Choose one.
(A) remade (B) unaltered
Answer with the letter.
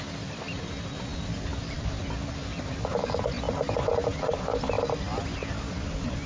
B